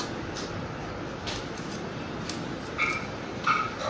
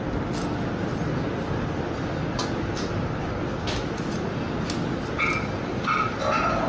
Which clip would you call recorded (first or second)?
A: second